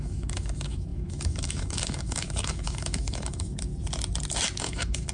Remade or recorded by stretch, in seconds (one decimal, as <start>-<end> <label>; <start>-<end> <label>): 0.0-3.7 remade; 3.7-4.6 recorded; 4.6-5.1 remade